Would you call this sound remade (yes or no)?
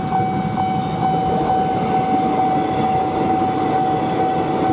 no